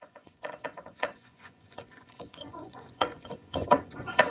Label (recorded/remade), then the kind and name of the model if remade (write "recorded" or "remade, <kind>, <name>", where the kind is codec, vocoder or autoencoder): remade, vocoder, Vocos